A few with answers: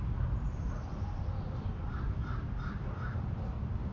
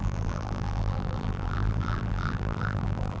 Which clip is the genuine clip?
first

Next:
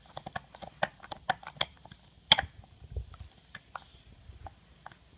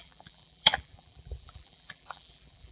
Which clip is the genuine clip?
first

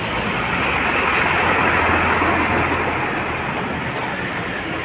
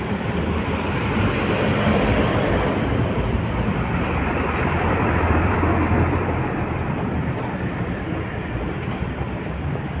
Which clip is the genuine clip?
first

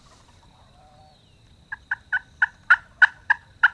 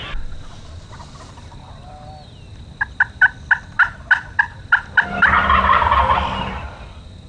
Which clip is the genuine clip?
second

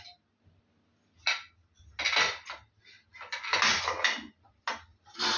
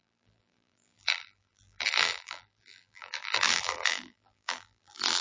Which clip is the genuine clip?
first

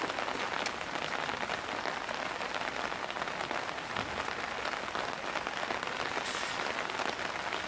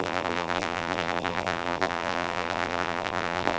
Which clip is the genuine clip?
first